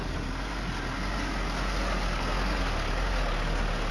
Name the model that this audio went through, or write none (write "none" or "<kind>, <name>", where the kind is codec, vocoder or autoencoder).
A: none